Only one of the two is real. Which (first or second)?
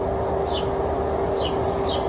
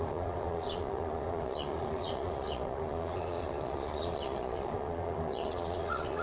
first